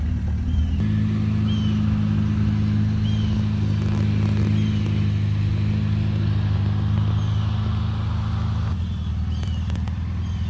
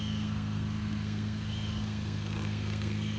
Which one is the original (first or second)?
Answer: first